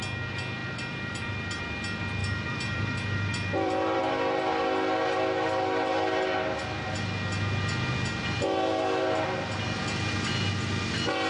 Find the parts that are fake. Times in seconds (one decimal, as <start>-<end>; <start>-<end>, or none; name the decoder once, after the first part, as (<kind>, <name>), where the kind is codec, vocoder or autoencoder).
0.6-1.6 (vocoder, BigVGAN v2); 2.2-4.0